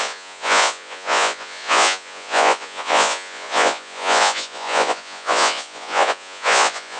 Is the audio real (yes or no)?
no